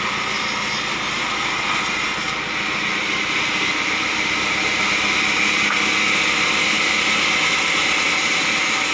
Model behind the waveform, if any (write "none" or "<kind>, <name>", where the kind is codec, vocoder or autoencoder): none